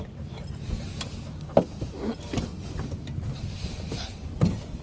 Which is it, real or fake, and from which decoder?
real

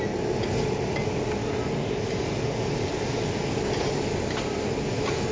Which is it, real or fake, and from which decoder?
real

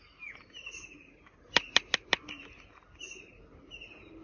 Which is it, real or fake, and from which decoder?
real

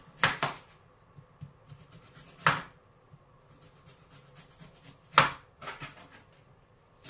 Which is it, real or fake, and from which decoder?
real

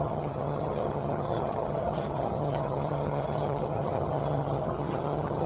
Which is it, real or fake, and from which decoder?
fake, vocoder, HiFi-GAN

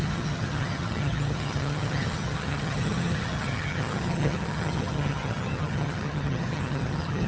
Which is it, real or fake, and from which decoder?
fake, vocoder, HiFi-GAN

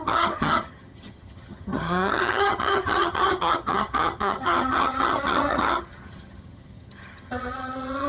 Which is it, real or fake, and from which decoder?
fake, vocoder, HiFi-GAN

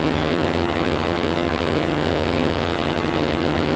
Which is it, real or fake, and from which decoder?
fake, vocoder, HiFi-GAN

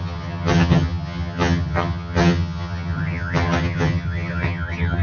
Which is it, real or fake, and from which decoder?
fake, vocoder, HiFi-GAN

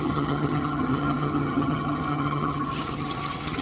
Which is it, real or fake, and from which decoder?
fake, vocoder, HiFi-GAN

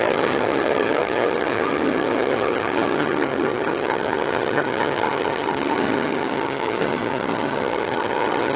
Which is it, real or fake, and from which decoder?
fake, vocoder, HiFi-GAN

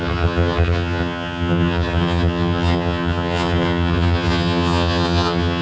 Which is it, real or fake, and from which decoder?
fake, vocoder, HiFi-GAN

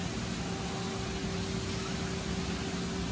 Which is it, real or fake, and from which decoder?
real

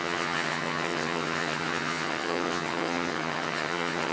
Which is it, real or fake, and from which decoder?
fake, vocoder, HiFi-GAN